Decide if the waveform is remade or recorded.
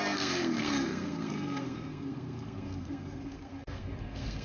remade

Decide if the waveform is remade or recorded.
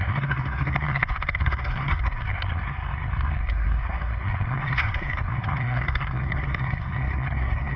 remade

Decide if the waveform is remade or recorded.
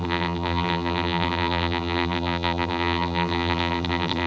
remade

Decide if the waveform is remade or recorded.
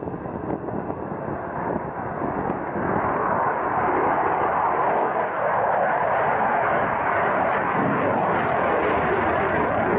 recorded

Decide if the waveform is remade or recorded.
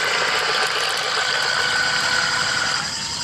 recorded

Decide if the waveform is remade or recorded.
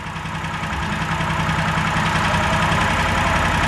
recorded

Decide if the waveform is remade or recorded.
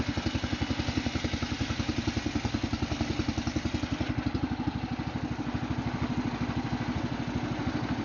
recorded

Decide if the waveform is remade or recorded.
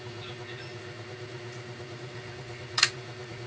remade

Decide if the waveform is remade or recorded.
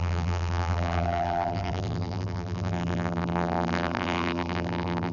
remade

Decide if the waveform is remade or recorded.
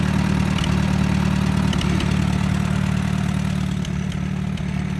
recorded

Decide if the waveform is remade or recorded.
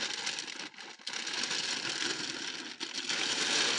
recorded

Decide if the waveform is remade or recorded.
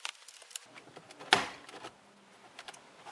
recorded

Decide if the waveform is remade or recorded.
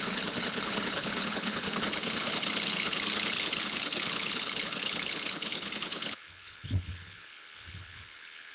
remade